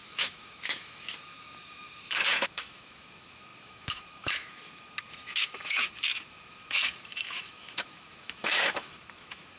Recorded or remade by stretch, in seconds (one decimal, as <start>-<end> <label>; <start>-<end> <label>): 0.0-9.6 remade